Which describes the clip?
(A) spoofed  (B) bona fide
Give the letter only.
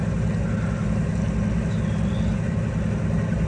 B